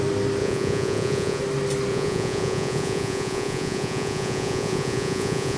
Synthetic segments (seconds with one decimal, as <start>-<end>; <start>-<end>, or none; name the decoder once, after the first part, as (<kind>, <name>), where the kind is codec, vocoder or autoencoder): 0.4-1.4 (vocoder, Vocos); 1.9-5.6